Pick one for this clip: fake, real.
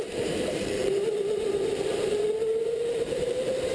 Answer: fake